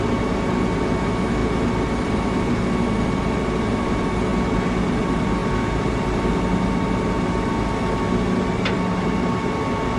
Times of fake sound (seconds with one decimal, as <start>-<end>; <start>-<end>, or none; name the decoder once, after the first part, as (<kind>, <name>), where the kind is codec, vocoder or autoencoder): none